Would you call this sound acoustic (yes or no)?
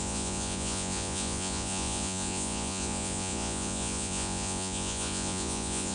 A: no